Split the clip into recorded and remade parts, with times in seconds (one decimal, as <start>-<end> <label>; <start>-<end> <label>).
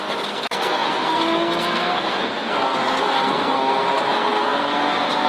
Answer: 0.0-5.3 remade